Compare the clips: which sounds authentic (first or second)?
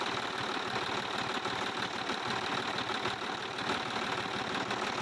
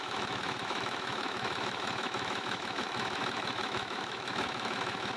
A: first